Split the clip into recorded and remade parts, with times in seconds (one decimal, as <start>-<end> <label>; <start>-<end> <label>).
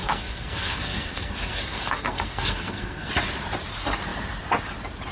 0.0-3.1 remade; 3.1-5.1 recorded